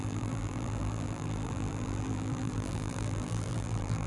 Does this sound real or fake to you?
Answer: fake